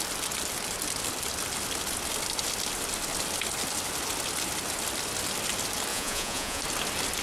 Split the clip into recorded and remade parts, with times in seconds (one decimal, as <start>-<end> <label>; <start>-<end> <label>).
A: 0.0-5.9 recorded; 5.9-6.6 remade; 6.6-7.2 recorded